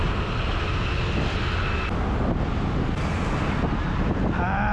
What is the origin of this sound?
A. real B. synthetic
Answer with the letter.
A